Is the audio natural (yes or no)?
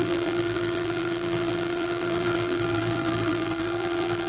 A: no